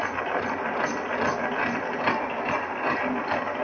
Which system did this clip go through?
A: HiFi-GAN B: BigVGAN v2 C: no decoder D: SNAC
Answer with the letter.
C